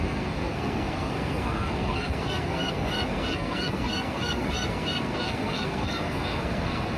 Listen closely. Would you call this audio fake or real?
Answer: fake